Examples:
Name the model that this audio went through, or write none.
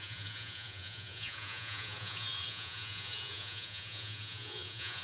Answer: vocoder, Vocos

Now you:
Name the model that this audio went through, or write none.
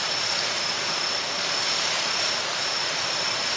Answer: none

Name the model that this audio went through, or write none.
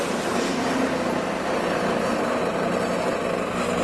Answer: none